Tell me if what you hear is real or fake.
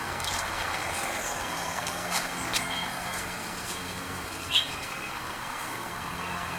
fake